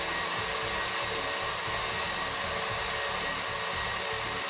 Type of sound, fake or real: real